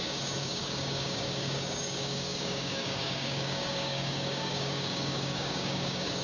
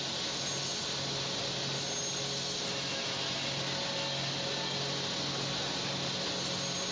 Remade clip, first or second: first